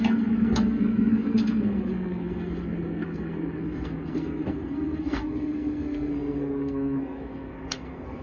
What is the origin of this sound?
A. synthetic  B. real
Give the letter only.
A